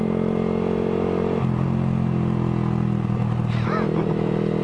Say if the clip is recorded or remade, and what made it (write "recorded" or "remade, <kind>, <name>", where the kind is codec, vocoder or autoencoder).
recorded